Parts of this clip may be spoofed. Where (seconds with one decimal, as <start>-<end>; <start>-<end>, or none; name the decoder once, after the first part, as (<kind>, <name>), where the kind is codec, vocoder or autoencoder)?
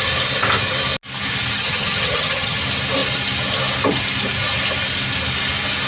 1.6-2.6 (vocoder, HiFi-GAN)